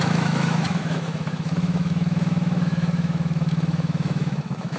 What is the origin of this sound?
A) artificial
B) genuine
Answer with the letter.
A